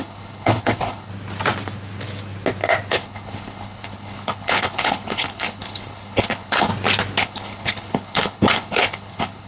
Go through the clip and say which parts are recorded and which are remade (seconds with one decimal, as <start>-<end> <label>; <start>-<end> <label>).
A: 0.0-1.1 remade; 1.1-2.9 recorded; 2.9-6.7 remade; 6.7-7.2 recorded; 7.2-9.5 remade